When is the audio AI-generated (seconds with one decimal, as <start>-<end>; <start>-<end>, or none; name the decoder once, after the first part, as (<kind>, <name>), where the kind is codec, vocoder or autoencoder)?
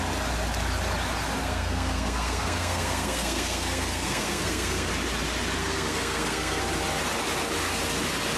1.4-4.9 (codec, SNAC); 5.6-6.6